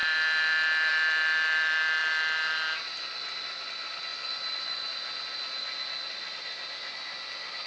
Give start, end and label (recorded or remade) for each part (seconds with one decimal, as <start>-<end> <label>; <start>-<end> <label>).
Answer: 0.0-7.7 recorded